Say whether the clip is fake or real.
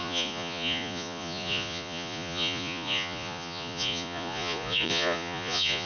fake